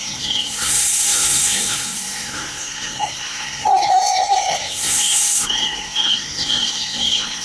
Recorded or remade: remade